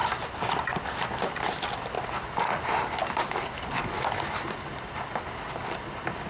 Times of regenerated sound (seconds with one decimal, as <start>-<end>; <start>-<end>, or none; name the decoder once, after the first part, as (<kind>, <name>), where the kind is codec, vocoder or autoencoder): none